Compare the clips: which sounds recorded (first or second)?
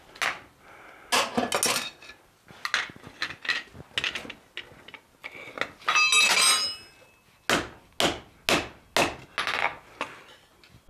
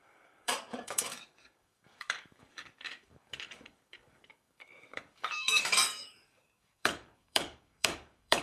first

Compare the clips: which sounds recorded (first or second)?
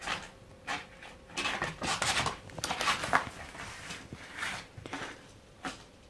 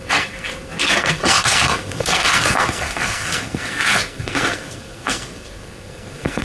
first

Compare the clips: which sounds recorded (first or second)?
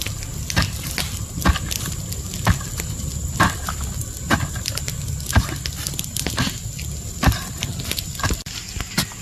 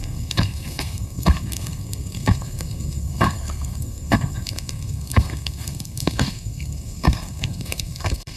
first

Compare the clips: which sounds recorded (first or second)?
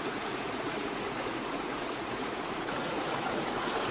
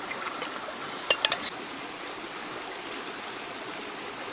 second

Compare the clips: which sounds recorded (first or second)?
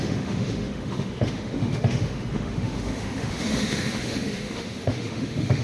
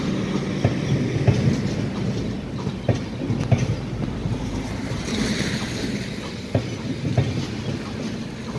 second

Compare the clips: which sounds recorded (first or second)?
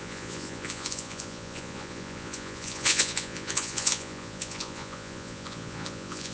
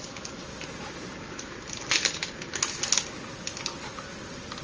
second